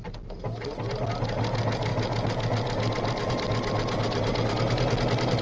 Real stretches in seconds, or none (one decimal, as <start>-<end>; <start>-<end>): 0.0-5.4